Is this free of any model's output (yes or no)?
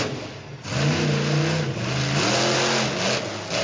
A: yes